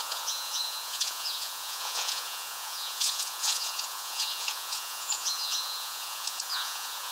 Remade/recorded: remade